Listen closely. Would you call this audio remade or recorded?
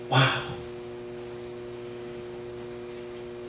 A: recorded